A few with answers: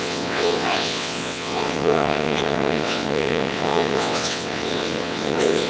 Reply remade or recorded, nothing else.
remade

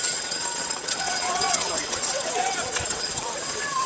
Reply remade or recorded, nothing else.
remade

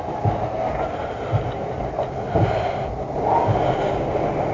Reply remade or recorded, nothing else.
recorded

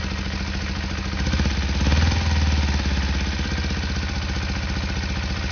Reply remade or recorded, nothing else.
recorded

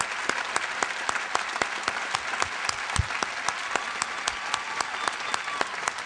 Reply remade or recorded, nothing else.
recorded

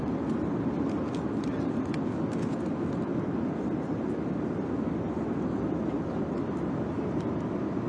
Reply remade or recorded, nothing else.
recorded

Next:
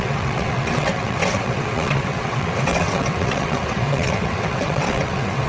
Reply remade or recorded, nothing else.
remade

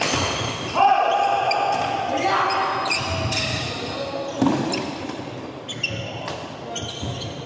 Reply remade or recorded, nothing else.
recorded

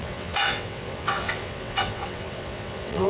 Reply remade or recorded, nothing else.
remade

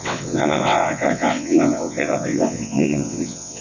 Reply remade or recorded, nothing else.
remade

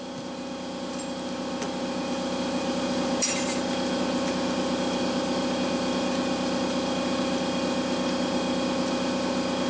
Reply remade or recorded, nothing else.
recorded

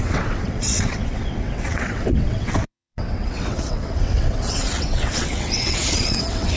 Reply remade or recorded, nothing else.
remade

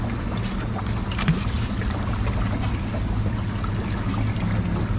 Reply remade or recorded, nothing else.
recorded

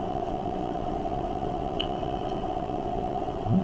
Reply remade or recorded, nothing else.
remade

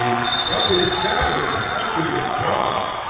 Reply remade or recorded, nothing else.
remade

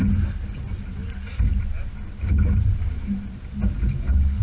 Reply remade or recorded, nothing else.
recorded